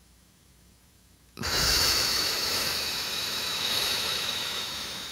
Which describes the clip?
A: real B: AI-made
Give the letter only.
B